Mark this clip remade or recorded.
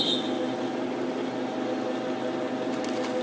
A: recorded